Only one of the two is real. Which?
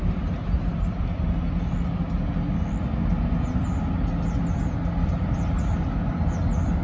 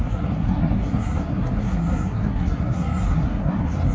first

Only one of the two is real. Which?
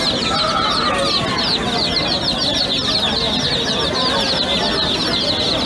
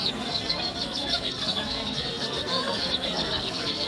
first